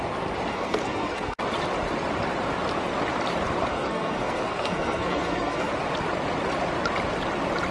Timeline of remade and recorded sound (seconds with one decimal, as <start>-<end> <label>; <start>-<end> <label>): 0.0-0.5 recorded; 0.5-1.4 remade; 1.4-3.7 recorded; 3.7-5.7 remade; 5.7-7.7 recorded